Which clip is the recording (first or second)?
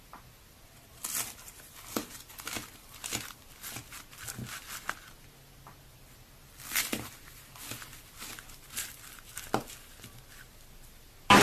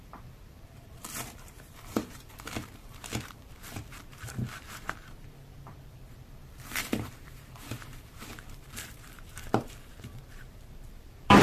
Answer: first